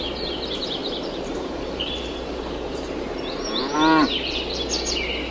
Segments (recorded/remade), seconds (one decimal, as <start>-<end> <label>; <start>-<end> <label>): 0.0-0.8 recorded; 0.8-3.6 remade; 3.6-5.3 recorded